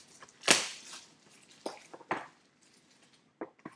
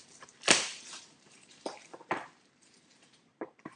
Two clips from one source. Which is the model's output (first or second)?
second